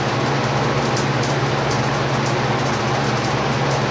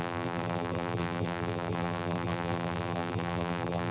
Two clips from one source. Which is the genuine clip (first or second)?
first